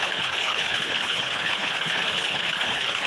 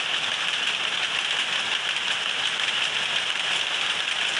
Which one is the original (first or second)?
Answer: second